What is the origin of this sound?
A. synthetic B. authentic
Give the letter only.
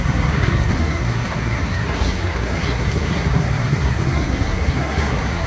A